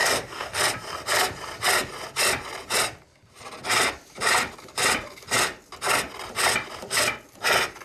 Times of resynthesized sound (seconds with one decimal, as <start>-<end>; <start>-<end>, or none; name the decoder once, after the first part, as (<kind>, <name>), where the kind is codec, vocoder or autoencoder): 0.0-0.6 (codec, DAC)